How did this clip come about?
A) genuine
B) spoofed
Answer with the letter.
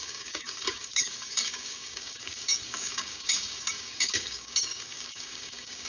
B